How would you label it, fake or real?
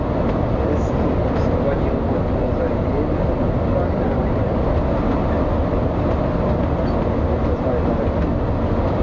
real